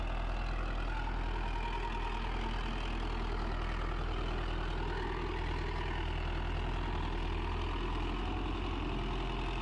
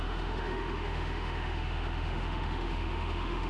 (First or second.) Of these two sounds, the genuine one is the first